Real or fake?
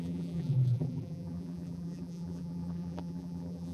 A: fake